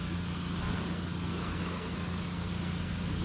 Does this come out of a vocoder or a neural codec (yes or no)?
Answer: yes